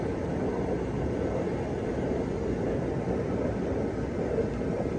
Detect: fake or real real